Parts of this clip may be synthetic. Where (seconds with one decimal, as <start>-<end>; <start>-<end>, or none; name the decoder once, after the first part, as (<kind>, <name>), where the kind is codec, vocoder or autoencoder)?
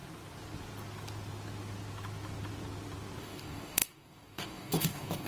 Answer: 3.2-5.3 (codec, DAC)